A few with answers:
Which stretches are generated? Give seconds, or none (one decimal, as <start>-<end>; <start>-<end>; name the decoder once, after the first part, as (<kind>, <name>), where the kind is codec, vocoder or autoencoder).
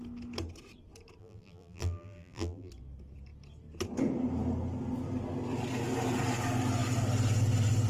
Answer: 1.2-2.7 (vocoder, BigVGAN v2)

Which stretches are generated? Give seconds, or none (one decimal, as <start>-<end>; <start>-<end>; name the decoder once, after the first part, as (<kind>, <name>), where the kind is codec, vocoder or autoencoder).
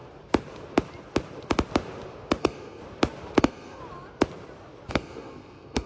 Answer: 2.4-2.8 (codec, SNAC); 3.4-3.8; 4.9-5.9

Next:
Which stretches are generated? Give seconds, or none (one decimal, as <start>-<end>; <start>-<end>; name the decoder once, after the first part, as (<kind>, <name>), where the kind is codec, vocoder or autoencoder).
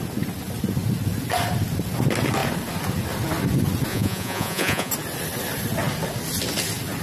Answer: 3.9-4.9 (vocoder, Vocos)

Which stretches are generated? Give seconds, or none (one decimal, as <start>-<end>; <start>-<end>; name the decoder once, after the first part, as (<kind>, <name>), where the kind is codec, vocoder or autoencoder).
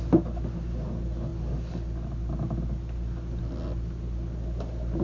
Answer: none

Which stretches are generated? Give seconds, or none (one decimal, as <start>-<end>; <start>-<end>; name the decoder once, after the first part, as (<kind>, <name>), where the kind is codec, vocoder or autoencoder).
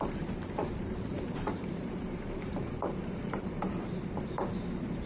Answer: 0.6-3.7 (vocoder, BigVGAN v2)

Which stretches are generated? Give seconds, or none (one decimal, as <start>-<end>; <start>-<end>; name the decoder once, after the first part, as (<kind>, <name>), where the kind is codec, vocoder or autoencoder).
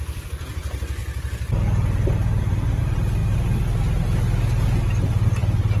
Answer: 0.0-1.0 (vocoder, BigVGAN v2); 2.8-3.2; 5.1-5.8